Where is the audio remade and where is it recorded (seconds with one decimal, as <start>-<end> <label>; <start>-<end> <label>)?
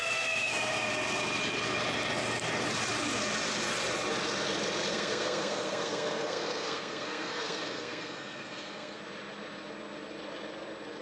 0.0-0.7 remade; 0.7-4.9 recorded; 4.9-9.0 remade; 9.0-11.0 recorded